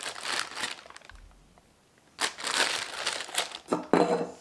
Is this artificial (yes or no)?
no